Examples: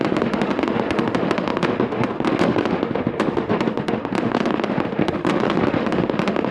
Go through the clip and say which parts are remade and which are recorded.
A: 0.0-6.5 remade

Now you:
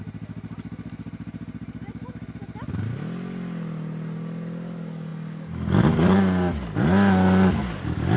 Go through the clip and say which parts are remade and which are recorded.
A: 0.0-8.2 recorded

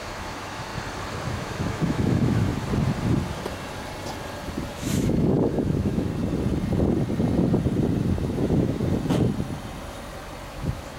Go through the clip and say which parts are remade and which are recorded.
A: 0.0-0.7 remade; 0.7-1.3 recorded; 1.3-2.5 remade; 2.5-4.7 recorded; 4.7-6.1 remade; 6.1-8.3 recorded; 8.3-8.8 remade; 8.8-10.5 recorded; 10.5-11.0 remade

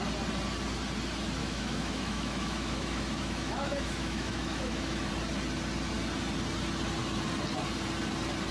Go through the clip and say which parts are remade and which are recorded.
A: 0.0-1.4 recorded; 1.4-5.1 remade; 5.1-8.5 recorded

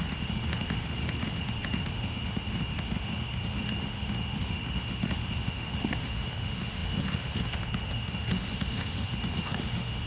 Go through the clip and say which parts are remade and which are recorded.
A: 0.0-10.1 remade

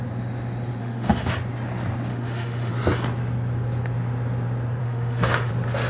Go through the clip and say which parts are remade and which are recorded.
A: 0.0-0.8 recorded; 0.8-1.3 remade; 1.3-2.1 recorded; 2.1-2.7 remade; 2.7-4.8 recorded; 4.8-5.5 remade; 5.5-5.9 recorded

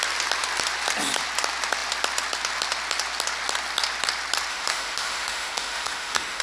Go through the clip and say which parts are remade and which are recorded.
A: 0.0-4.5 recorded; 4.5-6.4 remade

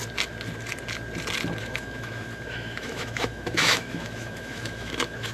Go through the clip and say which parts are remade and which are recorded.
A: 0.0-1.6 recorded; 1.6-5.3 remade